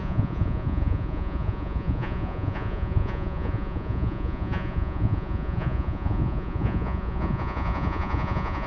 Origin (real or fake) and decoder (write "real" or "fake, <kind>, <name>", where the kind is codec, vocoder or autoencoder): fake, vocoder, Vocos